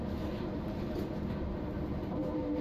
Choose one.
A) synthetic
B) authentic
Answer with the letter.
A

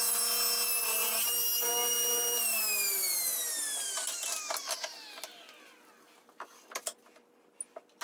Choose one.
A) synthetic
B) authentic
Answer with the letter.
B